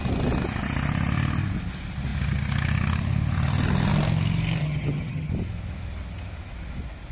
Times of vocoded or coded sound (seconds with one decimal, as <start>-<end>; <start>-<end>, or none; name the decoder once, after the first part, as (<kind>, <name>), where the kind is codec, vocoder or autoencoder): 4.6-5.3 (vocoder, HiFi-GAN)